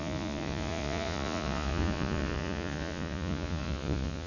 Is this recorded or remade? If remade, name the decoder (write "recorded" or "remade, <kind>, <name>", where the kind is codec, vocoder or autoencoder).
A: remade, vocoder, Vocos